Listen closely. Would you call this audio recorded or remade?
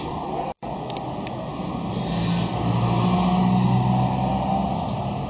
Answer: recorded